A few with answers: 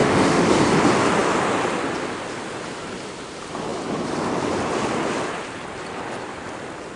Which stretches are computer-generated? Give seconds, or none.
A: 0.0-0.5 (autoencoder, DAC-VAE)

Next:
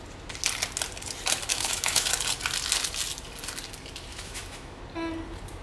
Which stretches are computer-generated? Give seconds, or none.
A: 1.5-2.1 (autoencoder, DAC-VAE); 4.1-4.8

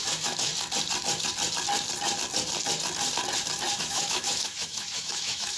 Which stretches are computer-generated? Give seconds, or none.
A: 0.0-0.5 (autoencoder, DAC-VAE); 3.8-5.6

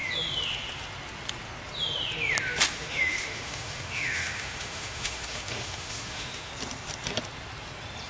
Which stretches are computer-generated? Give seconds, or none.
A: 2.7-6.5 (autoencoder, DAC-VAE)

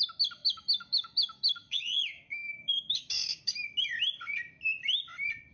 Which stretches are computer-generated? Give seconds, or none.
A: 0.4-3.7 (autoencoder, DAC-VAE)